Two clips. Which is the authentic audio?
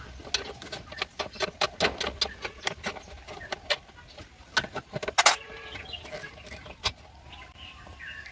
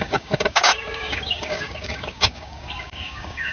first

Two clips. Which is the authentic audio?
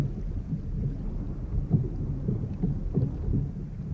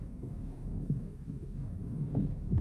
first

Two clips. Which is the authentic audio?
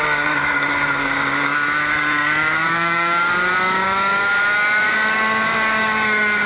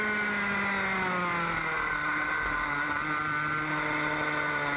second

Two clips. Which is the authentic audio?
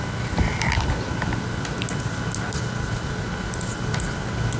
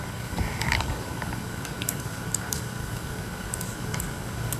first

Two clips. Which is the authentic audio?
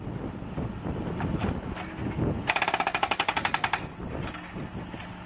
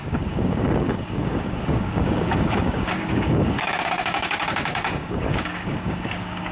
first